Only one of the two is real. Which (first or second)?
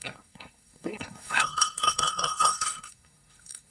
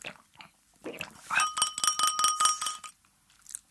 second